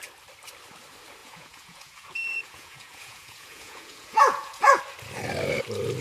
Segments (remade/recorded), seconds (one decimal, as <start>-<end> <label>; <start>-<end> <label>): 0.0-1.2 recorded; 1.2-4.8 remade; 4.8-6.0 recorded